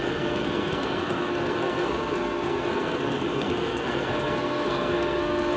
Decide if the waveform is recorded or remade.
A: remade